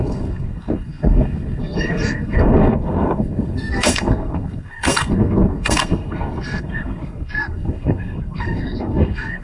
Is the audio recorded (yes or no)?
no